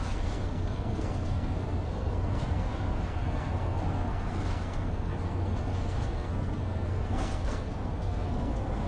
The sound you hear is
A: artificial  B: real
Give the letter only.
A